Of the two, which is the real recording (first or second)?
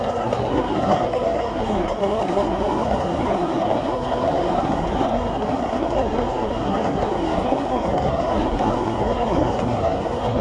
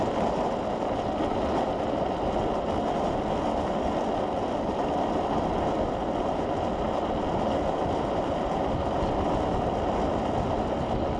second